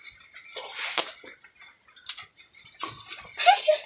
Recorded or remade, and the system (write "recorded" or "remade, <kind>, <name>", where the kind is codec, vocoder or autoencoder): recorded